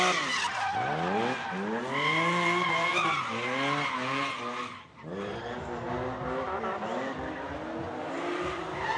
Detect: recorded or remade recorded